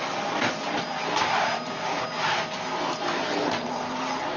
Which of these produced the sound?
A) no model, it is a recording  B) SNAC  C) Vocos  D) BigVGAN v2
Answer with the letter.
A